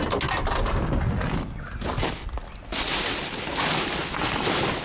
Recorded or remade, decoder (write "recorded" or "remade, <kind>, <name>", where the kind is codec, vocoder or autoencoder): recorded